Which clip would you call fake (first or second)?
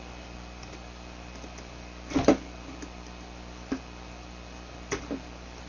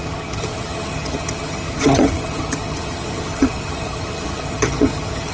second